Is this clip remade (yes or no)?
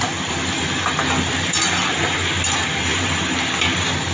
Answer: no